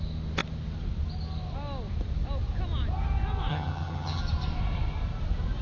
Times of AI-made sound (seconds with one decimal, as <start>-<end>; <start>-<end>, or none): 3.5-4.2